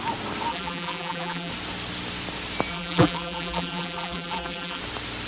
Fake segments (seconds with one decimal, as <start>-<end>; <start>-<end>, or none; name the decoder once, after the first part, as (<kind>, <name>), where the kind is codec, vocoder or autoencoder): 0.5-1.5 (vocoder, BigVGAN v2); 2.7-4.8

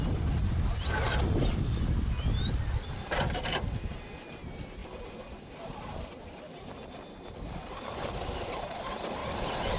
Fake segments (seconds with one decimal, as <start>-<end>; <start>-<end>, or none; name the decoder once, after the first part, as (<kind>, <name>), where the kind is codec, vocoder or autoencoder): 0.0-4.8 (vocoder, BigVGAN v2); 8.4-9.2

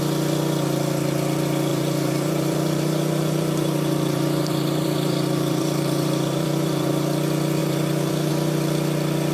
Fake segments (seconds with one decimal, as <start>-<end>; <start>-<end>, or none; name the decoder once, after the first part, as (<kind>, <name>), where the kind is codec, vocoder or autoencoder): 1.7-6.9 (vocoder, BigVGAN v2); 7.6-8.3

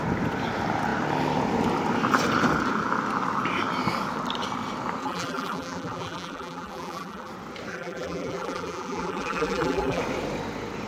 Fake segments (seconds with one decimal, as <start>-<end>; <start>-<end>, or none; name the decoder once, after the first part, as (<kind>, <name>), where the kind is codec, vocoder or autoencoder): 5.0-7.3 (vocoder, BigVGAN v2); 7.7-10.0

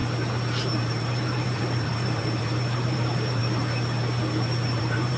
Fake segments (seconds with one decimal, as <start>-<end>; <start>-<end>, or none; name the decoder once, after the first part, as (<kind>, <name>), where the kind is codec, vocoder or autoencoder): 0.8-3.4 (vocoder, BigVGAN v2); 4.8-5.2

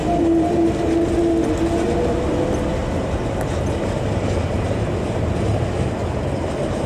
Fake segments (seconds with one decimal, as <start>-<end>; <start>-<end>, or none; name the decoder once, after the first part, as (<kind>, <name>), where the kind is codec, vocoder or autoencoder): 2.8-3.5 (vocoder, BigVGAN v2)

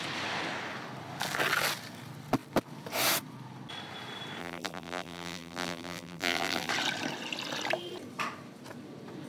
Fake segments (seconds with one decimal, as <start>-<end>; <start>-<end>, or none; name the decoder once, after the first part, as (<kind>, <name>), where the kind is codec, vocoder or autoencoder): 4.4-6.7 (vocoder, BigVGAN v2)

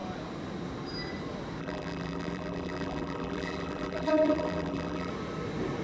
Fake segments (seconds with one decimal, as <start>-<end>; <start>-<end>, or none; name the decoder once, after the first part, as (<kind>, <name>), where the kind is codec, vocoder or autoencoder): 1.6-5.1 (vocoder, BigVGAN v2)